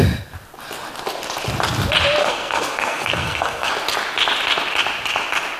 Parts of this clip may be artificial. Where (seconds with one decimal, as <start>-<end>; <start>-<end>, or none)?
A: 2.2-3.7